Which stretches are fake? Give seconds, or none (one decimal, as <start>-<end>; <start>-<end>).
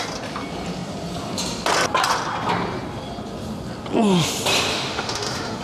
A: 4.7-5.6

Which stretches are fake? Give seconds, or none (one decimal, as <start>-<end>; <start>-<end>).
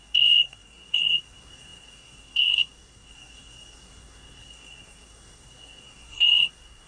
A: 0.0-6.9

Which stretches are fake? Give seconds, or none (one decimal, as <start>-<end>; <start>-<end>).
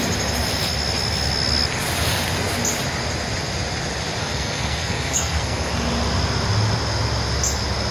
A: 4.2-5.7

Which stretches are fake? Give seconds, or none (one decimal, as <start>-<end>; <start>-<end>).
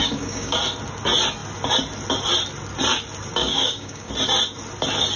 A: 0.0-0.6; 3.4-4.1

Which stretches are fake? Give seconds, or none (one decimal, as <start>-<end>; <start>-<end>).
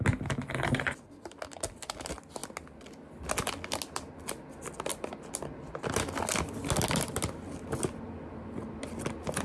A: none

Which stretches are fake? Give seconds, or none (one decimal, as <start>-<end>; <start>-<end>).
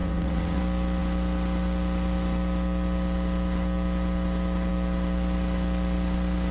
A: 0.0-0.6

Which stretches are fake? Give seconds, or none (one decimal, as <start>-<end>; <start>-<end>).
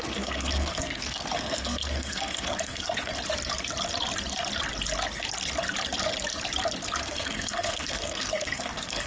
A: 0.0-3.1; 7.0-9.1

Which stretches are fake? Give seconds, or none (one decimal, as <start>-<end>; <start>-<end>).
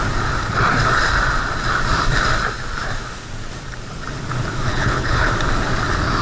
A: 4.7-5.3